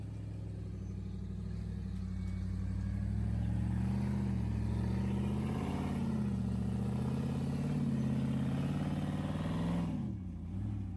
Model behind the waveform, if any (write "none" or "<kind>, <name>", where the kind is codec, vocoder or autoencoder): none